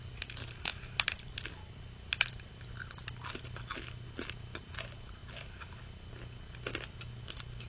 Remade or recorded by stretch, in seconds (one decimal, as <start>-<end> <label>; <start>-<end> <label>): 0.0-0.7 recorded; 0.7-2.5 remade; 2.5-5.2 recorded; 5.2-5.8 remade; 5.8-7.7 recorded